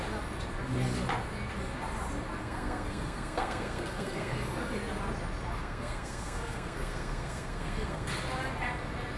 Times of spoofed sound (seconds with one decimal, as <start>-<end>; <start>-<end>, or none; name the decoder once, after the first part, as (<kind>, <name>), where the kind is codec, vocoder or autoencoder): 2.4-4.3 (codec, SNAC); 5.6-8.1